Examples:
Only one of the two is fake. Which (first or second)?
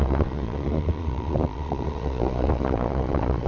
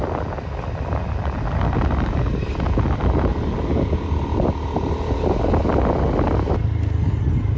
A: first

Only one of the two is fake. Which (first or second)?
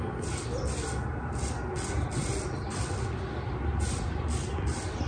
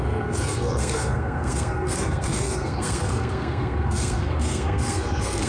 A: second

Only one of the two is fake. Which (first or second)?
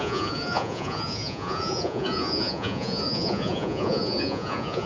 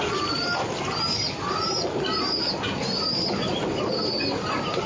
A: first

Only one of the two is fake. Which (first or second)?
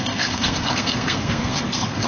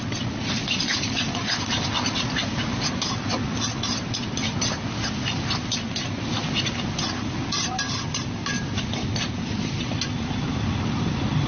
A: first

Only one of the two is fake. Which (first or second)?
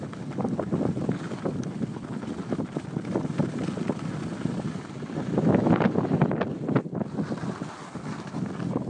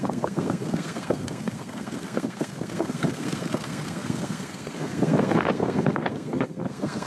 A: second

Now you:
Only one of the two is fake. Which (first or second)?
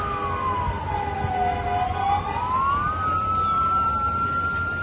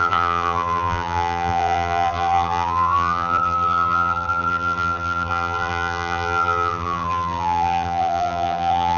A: second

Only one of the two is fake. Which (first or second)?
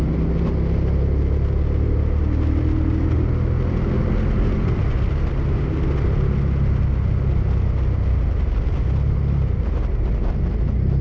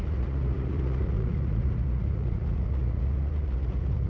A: second